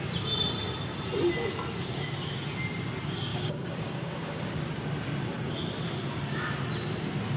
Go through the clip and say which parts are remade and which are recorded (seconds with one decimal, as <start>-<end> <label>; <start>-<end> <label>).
0.0-3.3 recorded; 3.3-4.5 remade; 4.5-7.4 recorded